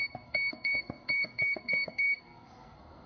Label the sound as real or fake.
fake